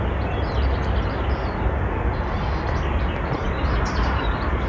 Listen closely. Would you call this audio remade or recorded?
recorded